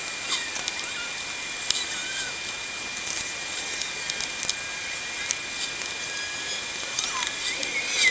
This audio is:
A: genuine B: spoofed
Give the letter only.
A